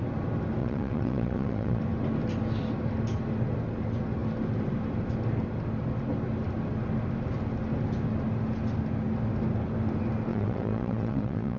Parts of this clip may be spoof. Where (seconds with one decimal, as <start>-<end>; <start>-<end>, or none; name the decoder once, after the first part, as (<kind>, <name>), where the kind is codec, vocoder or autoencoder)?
0.6-1.8 (vocoder, WaveNeXt); 10.3-11.6